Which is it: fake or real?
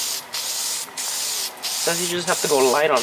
real